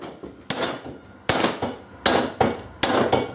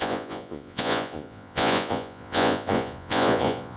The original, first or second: first